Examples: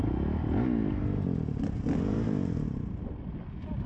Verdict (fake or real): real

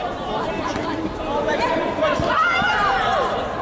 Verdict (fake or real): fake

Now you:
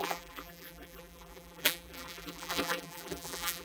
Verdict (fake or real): fake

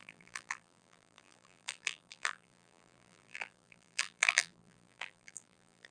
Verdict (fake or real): fake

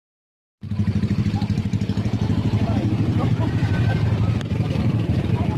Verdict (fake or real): fake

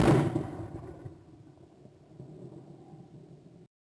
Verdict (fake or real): real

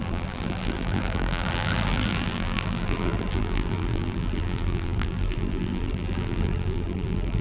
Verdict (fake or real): fake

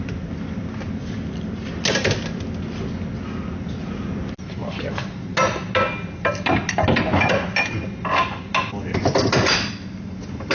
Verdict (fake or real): real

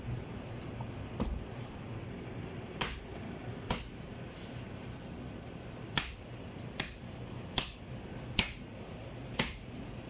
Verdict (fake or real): fake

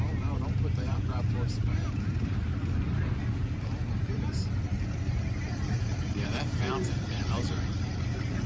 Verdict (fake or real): fake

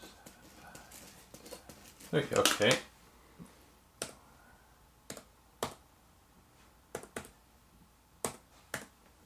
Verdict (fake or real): real